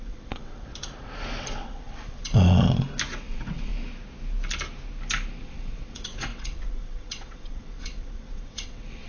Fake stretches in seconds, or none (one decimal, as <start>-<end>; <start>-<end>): 0.0-0.7; 1.4-2.3; 3.1-3.7; 5.4-9.1

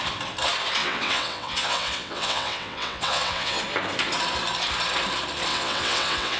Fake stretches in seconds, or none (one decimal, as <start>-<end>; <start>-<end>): 0.8-3.6; 5.5-6.4

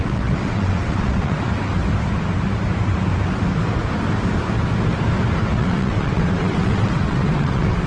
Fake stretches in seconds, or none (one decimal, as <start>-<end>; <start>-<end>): 0.0-1.5; 5.4-7.9

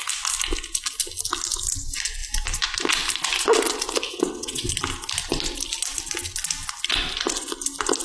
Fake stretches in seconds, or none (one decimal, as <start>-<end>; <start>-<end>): 4.1-4.7

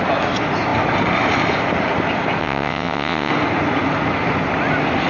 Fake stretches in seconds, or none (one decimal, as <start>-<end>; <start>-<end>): 2.4-3.3

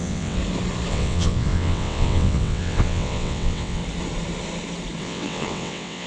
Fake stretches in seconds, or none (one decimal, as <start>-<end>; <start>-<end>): 0.0-0.4; 0.9-3.8; 5.0-6.1

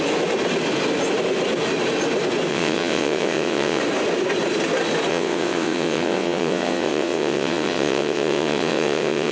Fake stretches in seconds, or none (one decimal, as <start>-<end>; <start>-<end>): 2.5-3.8; 5.1-9.3

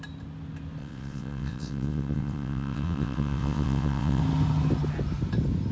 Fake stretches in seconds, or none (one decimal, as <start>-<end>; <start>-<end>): 0.8-4.2